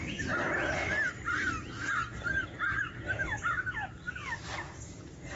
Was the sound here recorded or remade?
recorded